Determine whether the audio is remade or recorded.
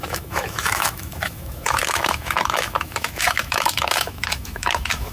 remade